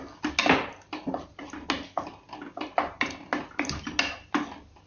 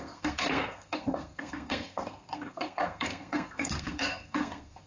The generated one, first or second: second